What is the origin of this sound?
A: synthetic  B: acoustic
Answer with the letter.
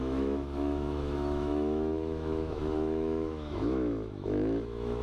A